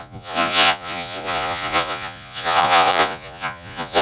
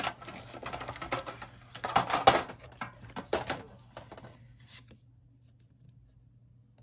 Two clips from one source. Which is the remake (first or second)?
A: first